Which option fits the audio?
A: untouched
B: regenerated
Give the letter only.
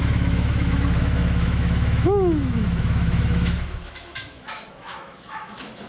B